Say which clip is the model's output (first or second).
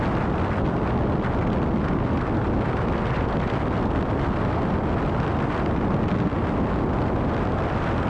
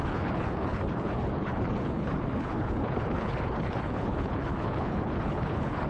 second